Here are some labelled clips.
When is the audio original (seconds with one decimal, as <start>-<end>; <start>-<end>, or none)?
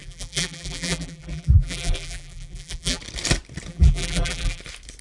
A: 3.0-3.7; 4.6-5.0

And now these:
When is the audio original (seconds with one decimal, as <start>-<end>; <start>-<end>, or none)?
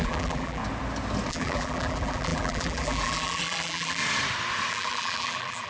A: 0.6-1.3; 4.0-4.7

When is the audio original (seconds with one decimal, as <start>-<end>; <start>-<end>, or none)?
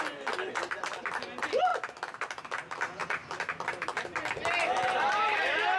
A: 0.0-3.2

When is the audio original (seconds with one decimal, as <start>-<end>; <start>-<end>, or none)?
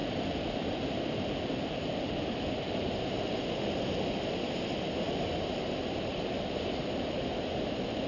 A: 2.9-8.1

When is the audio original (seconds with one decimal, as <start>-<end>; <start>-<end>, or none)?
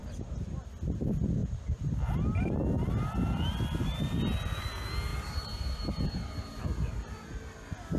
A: 0.6-5.1; 6.6-8.0